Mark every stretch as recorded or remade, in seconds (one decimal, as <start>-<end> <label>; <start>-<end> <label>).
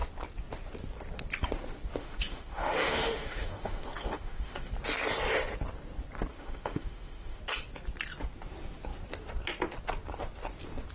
0.0-2.0 recorded; 2.0-4.7 remade; 4.7-6.3 recorded; 6.3-7.4 remade; 7.4-10.9 recorded